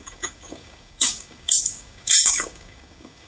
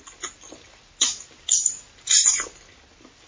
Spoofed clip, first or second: first